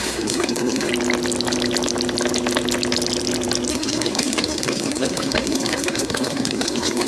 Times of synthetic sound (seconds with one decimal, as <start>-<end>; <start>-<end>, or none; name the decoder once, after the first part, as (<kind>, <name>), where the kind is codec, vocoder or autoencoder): 0.0-0.9 (codec, SNAC); 3.7-7.1